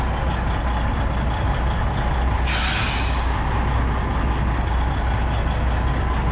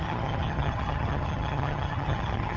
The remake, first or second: second